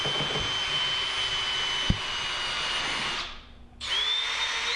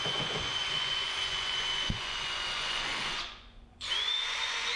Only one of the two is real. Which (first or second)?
first